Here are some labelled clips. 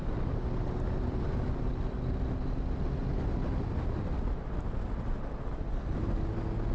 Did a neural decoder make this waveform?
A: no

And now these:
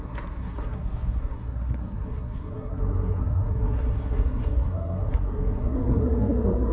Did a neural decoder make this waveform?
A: yes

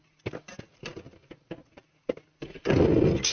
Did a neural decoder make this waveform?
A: no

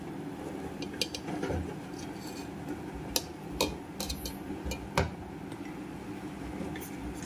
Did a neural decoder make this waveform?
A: no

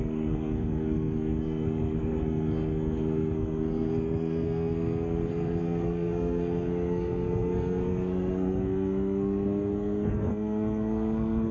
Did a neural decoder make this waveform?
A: yes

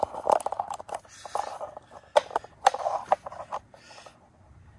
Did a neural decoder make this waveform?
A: no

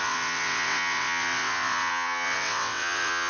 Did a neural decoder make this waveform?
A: yes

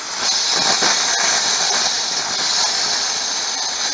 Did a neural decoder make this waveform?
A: no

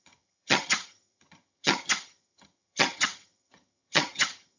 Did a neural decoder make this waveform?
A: yes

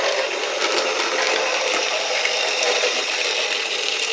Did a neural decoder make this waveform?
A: no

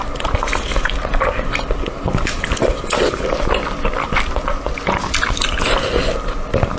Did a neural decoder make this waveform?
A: no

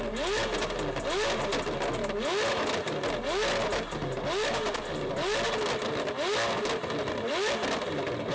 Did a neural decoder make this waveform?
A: no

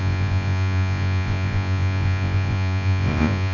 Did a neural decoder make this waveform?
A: yes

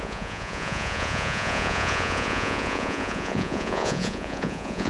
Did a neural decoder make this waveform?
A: yes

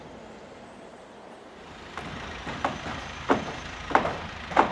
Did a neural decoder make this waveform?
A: no